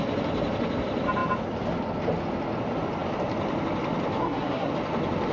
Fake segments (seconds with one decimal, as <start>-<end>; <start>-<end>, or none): 4.2-4.7